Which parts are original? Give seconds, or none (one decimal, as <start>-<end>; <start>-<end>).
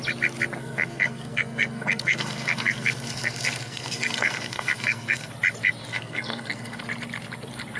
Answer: 0.0-0.6; 5.3-5.9; 6.8-7.8